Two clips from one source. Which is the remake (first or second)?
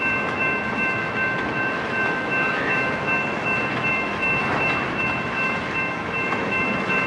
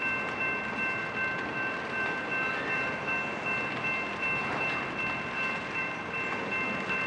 first